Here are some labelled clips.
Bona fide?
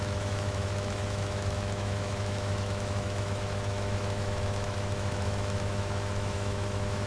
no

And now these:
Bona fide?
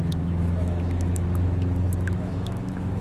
no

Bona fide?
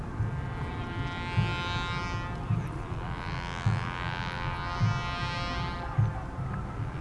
yes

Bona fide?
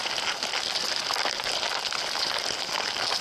yes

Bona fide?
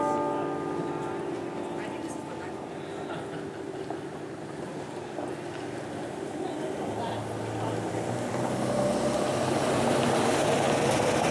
yes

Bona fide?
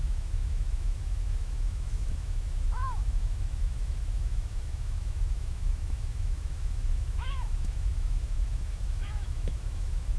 no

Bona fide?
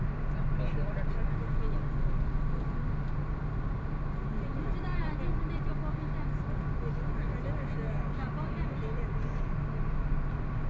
yes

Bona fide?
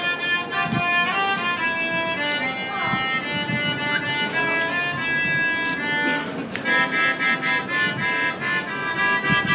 yes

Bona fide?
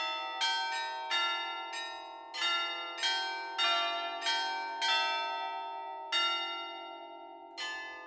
yes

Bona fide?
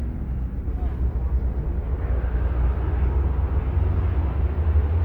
yes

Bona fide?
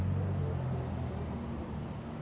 yes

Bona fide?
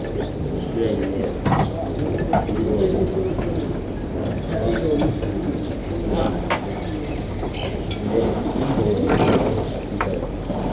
yes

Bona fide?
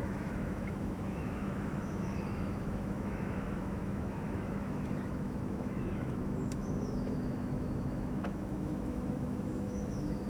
no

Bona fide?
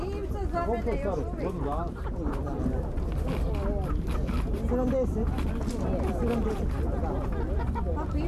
yes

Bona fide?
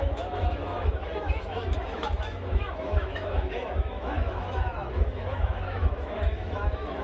no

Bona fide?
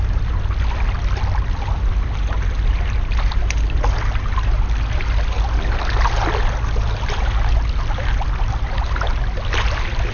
yes